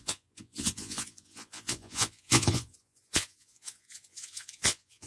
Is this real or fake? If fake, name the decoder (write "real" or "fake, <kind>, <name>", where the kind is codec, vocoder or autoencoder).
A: fake, vocoder, Vocos